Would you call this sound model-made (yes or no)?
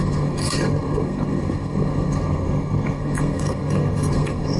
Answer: yes